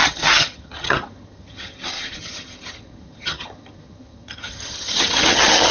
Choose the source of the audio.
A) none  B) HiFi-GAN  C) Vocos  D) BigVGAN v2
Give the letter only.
B